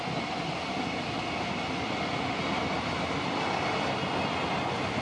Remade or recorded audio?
recorded